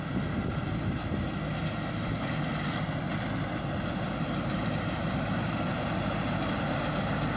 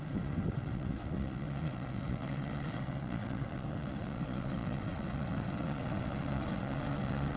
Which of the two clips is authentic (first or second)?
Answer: first